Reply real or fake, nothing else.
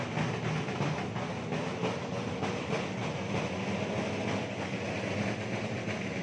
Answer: real